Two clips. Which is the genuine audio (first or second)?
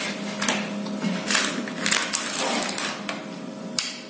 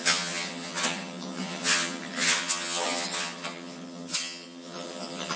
first